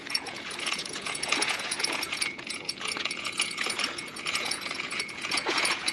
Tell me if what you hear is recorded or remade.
remade